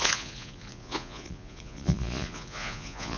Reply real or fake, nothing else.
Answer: fake